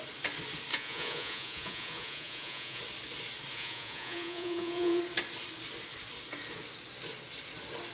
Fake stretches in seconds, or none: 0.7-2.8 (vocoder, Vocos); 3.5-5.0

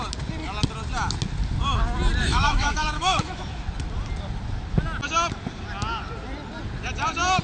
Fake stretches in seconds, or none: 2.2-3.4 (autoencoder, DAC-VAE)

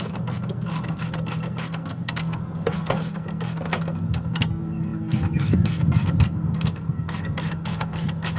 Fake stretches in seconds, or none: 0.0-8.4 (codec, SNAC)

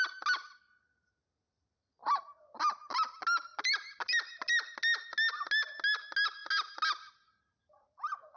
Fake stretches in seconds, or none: none